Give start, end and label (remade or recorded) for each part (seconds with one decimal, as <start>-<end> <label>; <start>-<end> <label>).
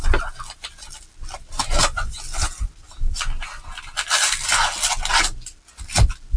0.0-6.4 recorded